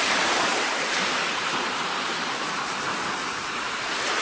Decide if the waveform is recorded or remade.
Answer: remade